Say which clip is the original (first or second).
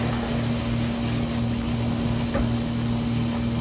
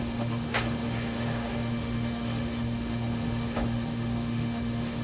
first